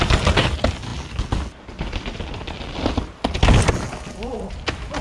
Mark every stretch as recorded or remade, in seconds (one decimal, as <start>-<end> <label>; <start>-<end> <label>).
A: 0.0-5.0 recorded